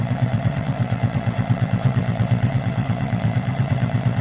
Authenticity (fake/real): fake